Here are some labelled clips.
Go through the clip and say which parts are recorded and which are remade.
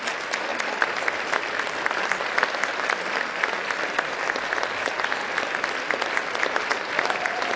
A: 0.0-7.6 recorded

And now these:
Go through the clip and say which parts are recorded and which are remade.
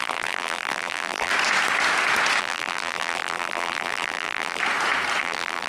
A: 0.0-1.3 remade; 1.3-2.4 recorded; 2.4-4.6 remade; 4.6-5.2 recorded; 5.2-5.7 remade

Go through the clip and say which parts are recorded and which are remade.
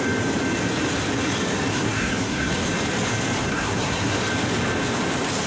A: 0.0-1.7 recorded; 1.7-2.5 remade; 2.5-3.5 recorded; 3.5-4.2 remade; 4.2-5.5 recorded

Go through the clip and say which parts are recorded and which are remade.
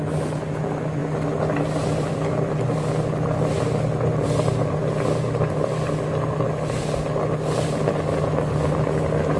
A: 0.0-9.4 recorded